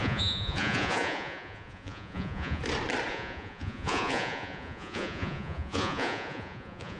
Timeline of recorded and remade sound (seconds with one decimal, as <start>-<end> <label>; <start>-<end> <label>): 0.0-2.6 remade; 2.6-3.1 recorded; 3.1-7.0 remade